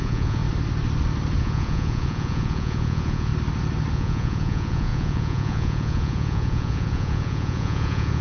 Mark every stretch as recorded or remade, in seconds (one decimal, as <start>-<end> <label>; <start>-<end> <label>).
0.0-0.4 remade; 0.4-1.4 recorded; 1.4-3.3 remade; 3.3-3.9 recorded; 3.9-8.2 remade